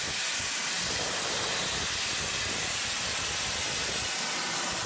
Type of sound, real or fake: real